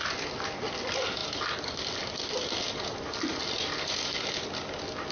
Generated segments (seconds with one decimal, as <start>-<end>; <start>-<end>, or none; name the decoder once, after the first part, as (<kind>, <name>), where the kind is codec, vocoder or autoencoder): none